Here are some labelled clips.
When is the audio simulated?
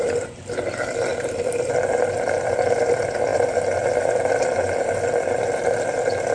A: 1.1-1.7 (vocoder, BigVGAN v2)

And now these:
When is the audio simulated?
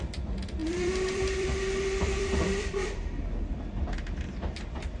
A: 0.6-3.6 (vocoder, BigVGAN v2)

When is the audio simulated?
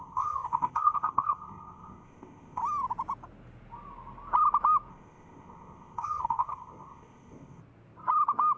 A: 0.0-2.6 (codec, ZipCodec); 4.9-7.6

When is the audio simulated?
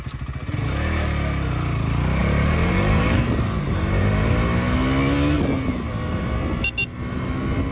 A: 2.2-4.3 (vocoder, BigVGAN v2)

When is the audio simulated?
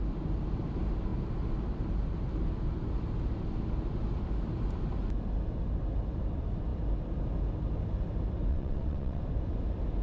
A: 8.5-9.2 (vocoder, WaveNeXt)